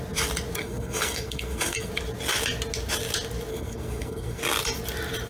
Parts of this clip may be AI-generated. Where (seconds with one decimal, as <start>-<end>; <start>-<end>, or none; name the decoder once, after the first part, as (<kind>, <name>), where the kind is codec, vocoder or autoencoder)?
0.6-1.9 (codec, SNAC); 3.5-4.4